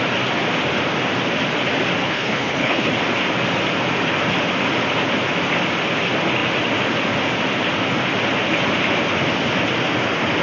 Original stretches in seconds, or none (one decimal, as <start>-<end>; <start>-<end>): 0.0-2.0; 2.9-10.4